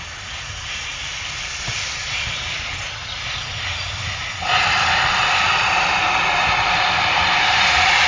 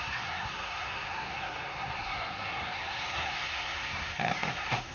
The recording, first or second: first